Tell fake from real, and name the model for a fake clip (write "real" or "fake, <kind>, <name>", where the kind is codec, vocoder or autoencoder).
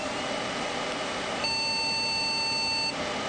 real